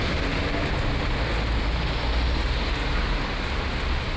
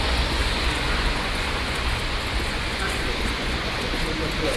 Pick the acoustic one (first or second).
first